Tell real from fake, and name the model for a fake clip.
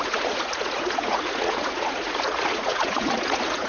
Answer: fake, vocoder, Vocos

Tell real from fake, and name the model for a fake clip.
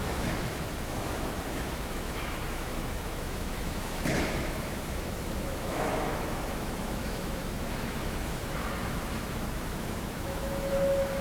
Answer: fake, autoencoder, DAC-VAE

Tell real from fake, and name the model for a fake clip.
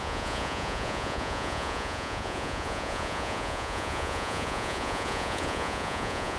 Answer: fake, vocoder, Vocos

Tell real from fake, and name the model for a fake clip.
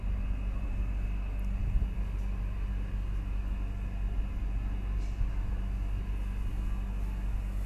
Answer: real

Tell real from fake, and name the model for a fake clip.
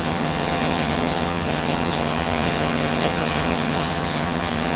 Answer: fake, vocoder, HiFi-GAN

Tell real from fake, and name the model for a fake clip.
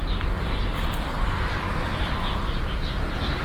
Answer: real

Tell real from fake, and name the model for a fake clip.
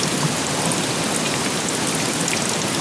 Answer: real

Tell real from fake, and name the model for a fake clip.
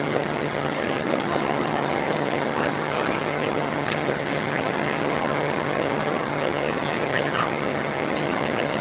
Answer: fake, vocoder, HiFi-GAN